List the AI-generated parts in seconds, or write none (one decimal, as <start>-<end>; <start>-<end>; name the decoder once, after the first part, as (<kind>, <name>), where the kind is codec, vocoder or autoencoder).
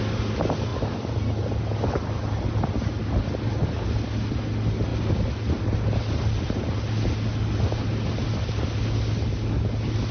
none